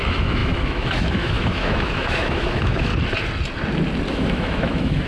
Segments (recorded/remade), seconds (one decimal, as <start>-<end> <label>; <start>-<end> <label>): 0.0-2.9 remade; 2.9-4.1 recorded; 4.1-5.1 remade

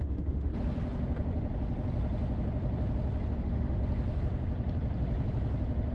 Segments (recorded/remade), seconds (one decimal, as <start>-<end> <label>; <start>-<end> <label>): 0.0-0.5 remade; 0.5-3.4 recorded; 3.4-3.8 remade; 3.8-5.9 recorded

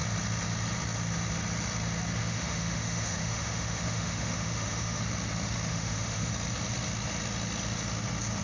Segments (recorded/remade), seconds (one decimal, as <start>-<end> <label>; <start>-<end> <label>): 0.0-2.2 recorded; 2.2-5.0 remade; 5.0-5.7 recorded; 5.7-6.3 remade; 6.3-8.4 recorded